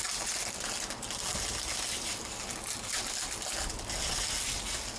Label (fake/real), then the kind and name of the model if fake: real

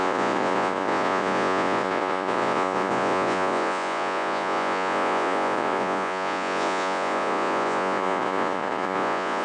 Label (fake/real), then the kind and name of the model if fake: fake, vocoder, Vocos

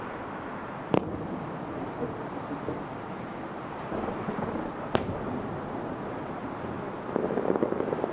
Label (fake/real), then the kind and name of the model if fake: real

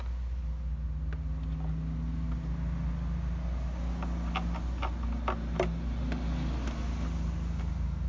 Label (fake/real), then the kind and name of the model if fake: real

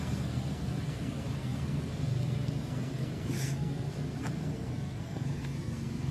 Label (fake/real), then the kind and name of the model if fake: fake, codec, SNAC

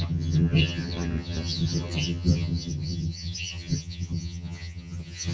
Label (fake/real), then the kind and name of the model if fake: fake, vocoder, HiFi-GAN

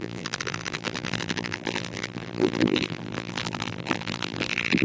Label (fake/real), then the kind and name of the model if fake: fake, vocoder, BigVGAN v2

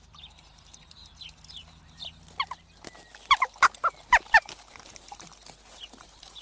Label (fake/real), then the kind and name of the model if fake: real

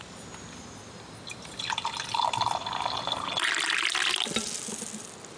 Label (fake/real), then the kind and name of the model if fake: real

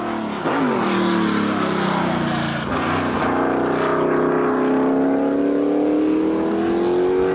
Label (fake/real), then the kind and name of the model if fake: real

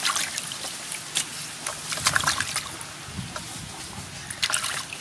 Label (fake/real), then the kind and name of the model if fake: real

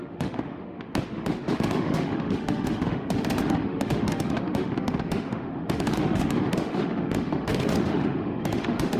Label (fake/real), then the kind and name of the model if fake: fake, autoencoder, DAC-VAE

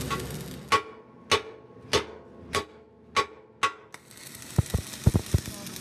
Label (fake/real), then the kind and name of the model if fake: real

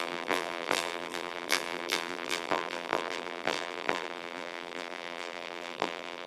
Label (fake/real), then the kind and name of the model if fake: fake, vocoder, BigVGAN v2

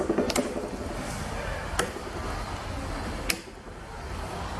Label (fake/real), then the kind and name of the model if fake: real